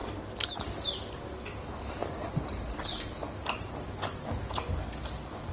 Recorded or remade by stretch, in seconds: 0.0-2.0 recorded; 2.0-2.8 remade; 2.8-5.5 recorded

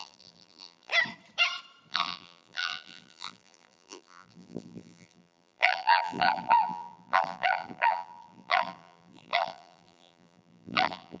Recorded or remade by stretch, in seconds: 0.0-0.9 remade; 0.9-1.9 recorded; 1.9-11.2 remade

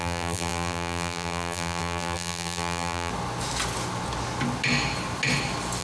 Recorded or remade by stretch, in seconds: 0.0-3.1 remade; 3.1-5.8 recorded